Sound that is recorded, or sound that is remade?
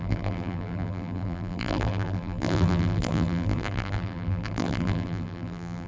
remade